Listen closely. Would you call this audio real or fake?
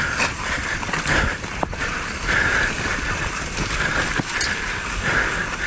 real